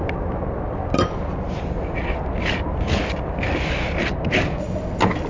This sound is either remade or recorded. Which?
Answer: recorded